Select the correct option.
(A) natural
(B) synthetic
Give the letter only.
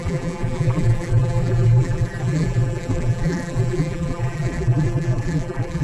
B